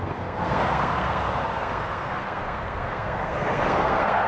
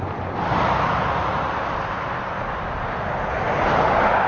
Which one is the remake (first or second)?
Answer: first